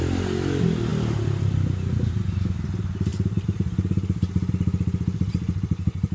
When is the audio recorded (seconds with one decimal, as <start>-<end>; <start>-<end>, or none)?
0.0-6.1